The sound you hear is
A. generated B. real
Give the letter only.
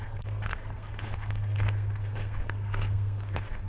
A